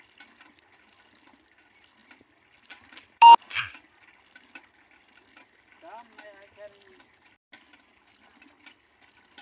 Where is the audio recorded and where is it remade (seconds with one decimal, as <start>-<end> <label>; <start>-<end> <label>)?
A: 0.0-9.4 recorded